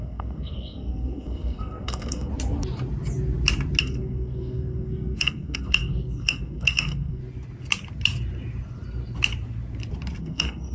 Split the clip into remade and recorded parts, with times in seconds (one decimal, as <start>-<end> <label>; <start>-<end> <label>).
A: 0.0-2.3 remade; 2.3-3.8 recorded; 3.8-7.2 remade; 7.2-10.2 recorded; 10.2-10.7 remade